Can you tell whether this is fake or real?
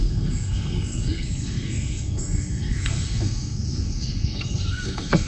fake